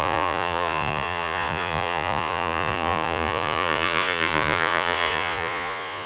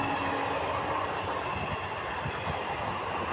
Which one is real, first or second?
second